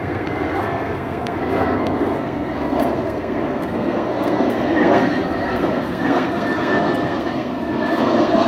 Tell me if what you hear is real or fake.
fake